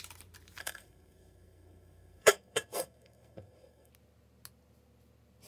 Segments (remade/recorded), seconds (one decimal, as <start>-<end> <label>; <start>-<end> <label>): 0.0-0.6 recorded; 0.6-3.9 remade; 3.9-5.5 recorded